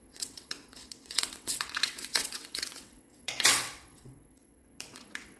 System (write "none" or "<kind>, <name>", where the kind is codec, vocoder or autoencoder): vocoder, WaveNeXt